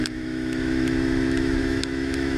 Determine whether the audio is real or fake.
fake